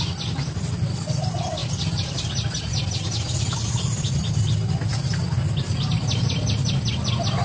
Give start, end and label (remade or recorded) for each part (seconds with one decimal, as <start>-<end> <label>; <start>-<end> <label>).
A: 0.0-7.4 recorded